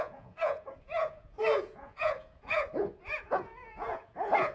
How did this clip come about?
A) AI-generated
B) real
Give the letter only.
A